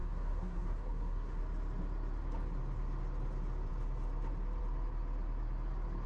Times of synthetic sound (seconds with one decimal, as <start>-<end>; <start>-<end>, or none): 0.0-1.4